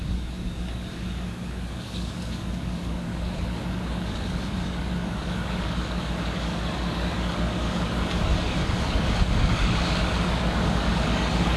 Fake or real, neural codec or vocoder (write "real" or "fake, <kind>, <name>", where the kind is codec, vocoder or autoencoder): fake, codec, DAC